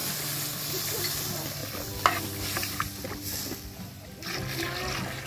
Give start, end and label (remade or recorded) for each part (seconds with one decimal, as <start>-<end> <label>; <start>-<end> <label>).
0.0-5.3 recorded